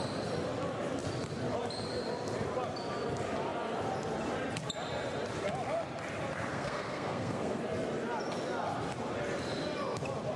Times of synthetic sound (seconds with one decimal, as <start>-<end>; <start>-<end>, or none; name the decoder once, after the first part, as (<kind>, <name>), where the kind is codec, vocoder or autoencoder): 6.5-7.6 (codec, SNAC)